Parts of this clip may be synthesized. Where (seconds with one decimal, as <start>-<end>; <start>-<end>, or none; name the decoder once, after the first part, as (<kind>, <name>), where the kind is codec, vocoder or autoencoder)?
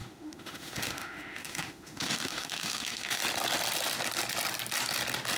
0.0-3.2 (autoencoder, DAC-VAE)